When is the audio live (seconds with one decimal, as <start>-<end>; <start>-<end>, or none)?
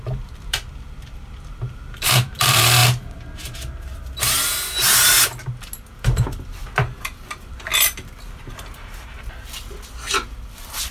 2.8-6.0; 7.7-10.1